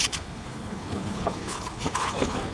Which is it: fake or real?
fake